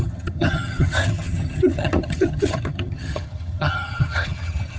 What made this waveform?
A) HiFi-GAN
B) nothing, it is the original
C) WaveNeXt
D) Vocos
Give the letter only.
A